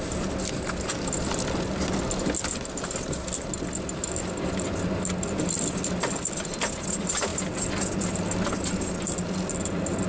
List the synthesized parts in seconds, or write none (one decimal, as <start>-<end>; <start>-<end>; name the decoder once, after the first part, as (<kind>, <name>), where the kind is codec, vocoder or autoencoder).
none